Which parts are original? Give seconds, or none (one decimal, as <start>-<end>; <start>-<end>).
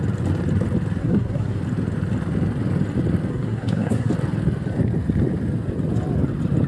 0.0-1.0; 1.6-3.3; 4.1-6.7